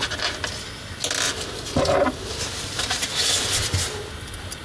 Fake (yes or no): no